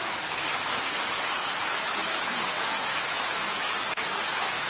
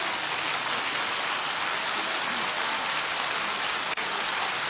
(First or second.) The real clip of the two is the second